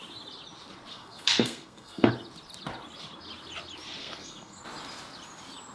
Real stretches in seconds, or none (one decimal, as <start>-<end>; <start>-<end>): 0.0-0.9; 2.1-4.0; 4.6-5.7